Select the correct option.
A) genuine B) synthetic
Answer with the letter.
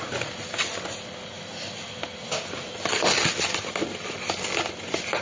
A